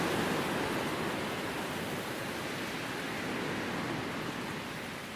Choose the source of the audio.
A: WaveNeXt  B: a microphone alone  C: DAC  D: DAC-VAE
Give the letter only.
B